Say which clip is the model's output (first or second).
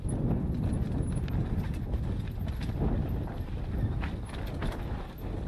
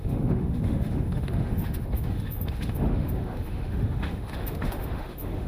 second